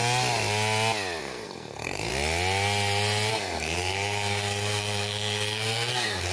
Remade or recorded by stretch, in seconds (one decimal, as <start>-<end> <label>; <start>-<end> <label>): 0.0-1.2 recorded; 1.2-2.1 remade; 2.1-3.3 recorded; 3.3-6.3 remade